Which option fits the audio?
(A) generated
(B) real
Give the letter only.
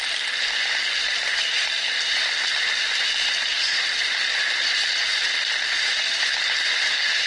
B